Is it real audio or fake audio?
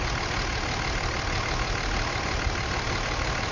real